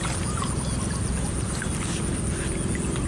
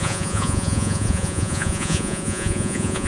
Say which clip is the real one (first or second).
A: first